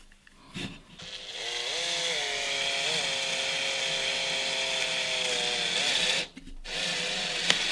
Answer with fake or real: real